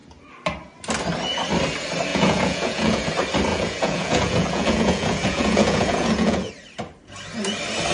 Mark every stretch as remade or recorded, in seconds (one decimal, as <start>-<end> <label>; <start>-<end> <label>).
0.0-2.1 recorded; 2.1-3.1 remade; 3.1-3.5 recorded; 3.5-6.5 remade; 6.5-7.9 recorded